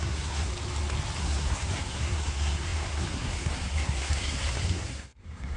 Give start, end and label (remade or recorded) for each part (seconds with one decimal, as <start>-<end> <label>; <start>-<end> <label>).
0.0-0.5 remade; 0.5-1.2 recorded; 1.2-5.6 remade